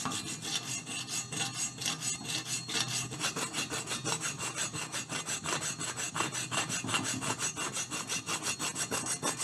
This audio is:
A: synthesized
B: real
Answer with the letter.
B